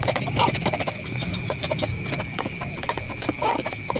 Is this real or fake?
fake